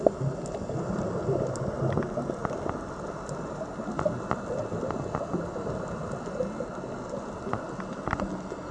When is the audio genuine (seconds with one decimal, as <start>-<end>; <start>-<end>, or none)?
0.0-8.7